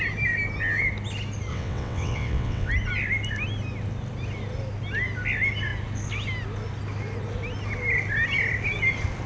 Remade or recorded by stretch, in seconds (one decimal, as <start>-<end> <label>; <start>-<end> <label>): 0.0-1.5 recorded; 1.5-2.7 remade; 2.7-9.3 recorded